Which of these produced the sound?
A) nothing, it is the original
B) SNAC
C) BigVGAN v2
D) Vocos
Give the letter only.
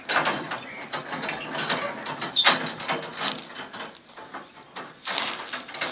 A